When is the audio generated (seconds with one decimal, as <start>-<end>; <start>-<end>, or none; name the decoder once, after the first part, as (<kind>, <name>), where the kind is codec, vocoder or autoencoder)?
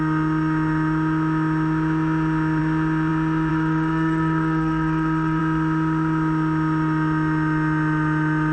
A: 3.5-5.4 (codec, DAC)